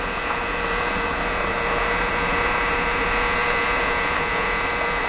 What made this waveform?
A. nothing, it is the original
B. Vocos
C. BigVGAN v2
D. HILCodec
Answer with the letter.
A